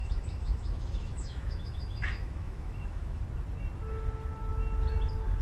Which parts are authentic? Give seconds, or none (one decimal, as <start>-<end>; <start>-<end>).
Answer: 3.2-5.4